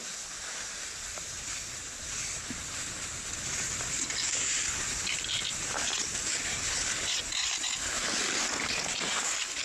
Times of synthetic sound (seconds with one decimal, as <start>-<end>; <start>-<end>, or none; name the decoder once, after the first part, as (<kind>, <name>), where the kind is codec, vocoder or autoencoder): 6.0-6.7 (vocoder, BigVGAN v2)